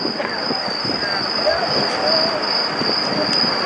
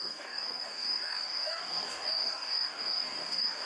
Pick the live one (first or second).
first